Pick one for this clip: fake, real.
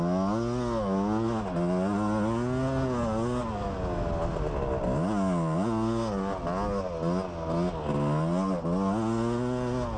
real